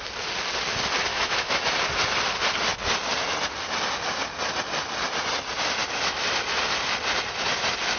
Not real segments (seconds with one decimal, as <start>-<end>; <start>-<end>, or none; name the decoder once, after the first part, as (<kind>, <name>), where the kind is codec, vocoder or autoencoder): 1.1-1.7 (autoencoder, DAC-VAE)